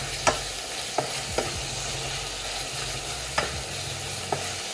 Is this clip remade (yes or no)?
no